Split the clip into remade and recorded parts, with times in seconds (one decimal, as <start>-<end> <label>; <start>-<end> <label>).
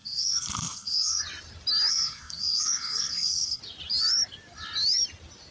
0.0-1.2 remade; 1.2-1.9 recorded; 1.9-3.6 remade; 3.6-5.5 recorded